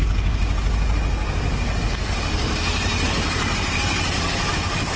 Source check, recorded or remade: recorded